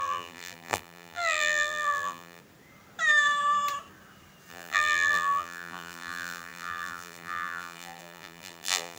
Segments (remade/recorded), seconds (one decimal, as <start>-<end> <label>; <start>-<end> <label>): 0.0-2.4 remade; 2.4-4.5 recorded; 4.5-9.0 remade